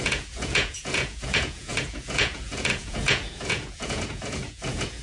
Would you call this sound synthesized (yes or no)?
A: yes